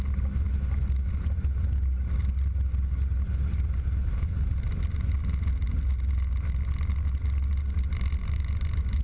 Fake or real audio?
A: real